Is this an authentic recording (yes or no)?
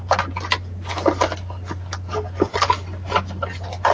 yes